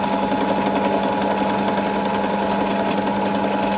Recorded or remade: recorded